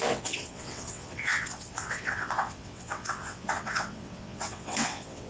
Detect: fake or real fake